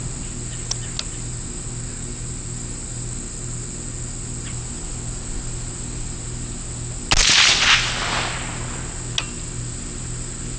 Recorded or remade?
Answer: recorded